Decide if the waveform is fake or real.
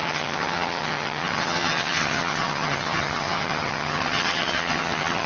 fake